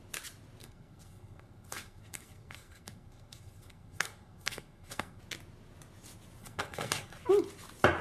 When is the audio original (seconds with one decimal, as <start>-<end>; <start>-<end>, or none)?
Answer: 0.0-0.6; 5.2-6.4; 7.2-8.0